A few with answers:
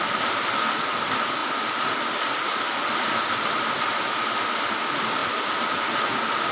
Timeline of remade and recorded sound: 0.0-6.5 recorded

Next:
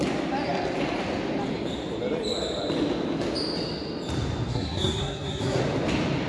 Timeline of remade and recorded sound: 0.0-4.5 recorded; 4.5-5.6 remade; 5.6-6.3 recorded

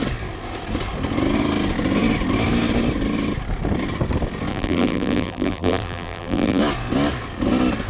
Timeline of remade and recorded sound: 0.0-4.5 recorded; 4.5-6.6 remade; 6.6-7.9 recorded

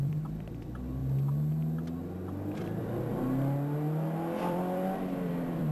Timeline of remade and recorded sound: 0.0-1.0 remade; 1.0-2.6 recorded; 2.6-3.1 remade; 3.1-4.4 recorded; 4.4-5.7 remade